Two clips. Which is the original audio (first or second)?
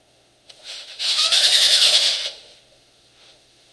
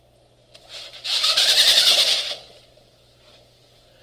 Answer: second